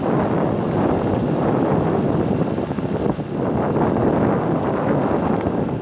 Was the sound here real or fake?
real